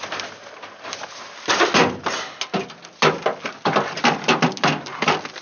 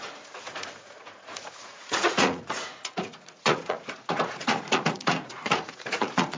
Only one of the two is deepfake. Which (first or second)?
second